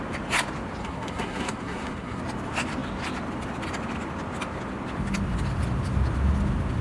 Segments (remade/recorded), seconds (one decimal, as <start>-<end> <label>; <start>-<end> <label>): 0.0-0.8 recorded; 0.8-2.2 remade; 2.2-6.8 recorded